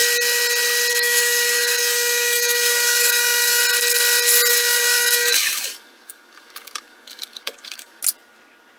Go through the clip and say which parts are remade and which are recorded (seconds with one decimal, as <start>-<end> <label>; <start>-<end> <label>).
0.0-0.9 recorded; 0.9-3.6 remade; 3.6-4.5 recorded; 4.5-8.0 remade; 8.0-8.8 recorded